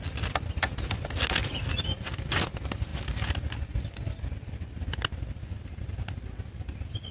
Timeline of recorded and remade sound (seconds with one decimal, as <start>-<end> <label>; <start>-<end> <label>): 0.0-7.1 recorded